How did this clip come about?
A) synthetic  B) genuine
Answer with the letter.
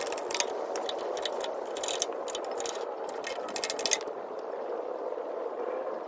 B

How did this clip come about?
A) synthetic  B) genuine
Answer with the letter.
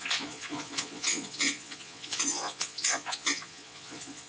A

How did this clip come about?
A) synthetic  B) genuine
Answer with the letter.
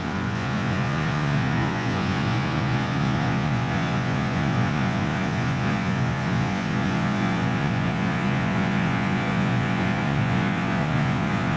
A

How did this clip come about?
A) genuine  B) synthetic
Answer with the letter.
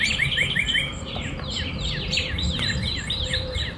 B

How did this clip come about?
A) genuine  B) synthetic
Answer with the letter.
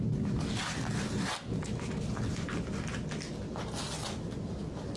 A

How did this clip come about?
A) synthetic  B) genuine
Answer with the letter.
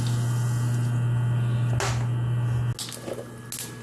B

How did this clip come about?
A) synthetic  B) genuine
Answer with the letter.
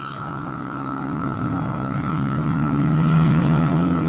A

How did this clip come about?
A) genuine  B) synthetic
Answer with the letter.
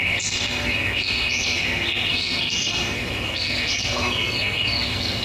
B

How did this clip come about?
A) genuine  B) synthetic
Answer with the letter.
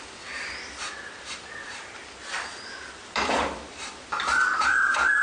B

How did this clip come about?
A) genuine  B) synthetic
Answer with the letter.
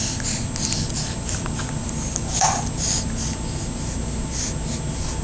A